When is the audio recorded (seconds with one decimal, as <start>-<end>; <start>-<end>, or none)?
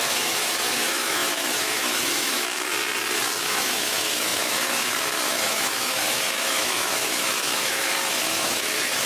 2.7-3.4